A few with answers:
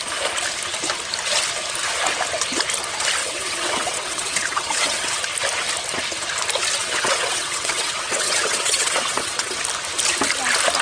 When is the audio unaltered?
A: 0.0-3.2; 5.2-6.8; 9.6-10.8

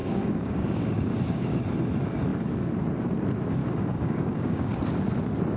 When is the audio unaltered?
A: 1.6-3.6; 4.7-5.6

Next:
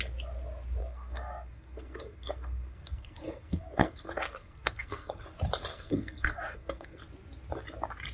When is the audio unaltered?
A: 0.0-0.8; 5.2-5.7; 7.0-8.1